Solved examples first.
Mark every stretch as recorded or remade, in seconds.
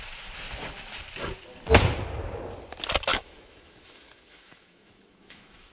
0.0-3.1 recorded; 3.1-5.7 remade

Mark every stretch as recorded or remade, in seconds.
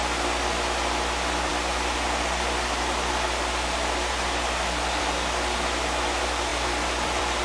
0.0-6.5 recorded; 6.5-7.4 remade